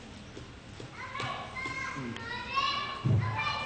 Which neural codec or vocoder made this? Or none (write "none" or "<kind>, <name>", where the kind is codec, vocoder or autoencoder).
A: none